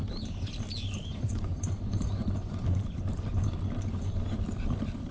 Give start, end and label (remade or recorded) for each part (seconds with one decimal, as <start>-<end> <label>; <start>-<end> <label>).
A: 0.0-1.1 recorded; 1.1-2.9 remade; 2.9-5.1 recorded